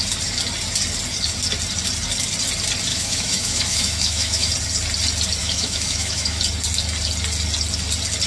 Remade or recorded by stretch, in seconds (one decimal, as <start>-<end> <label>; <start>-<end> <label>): 0.0-2.9 recorded; 2.9-4.5 remade; 4.5-5.4 recorded; 5.4-6.4 remade; 6.4-8.3 recorded